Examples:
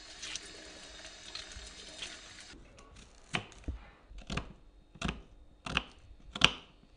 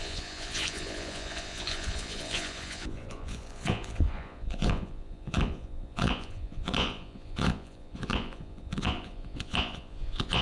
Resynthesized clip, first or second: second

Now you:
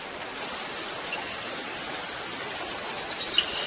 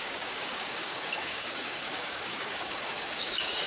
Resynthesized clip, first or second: second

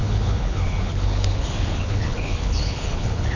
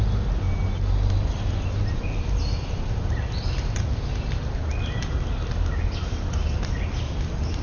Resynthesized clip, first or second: first